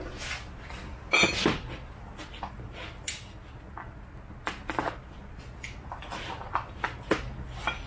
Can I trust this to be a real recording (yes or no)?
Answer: yes